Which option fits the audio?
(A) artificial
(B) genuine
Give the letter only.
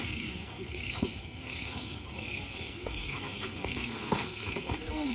A